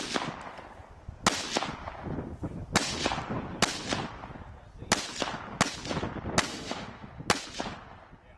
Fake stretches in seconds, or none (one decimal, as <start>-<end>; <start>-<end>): 6.5-7.1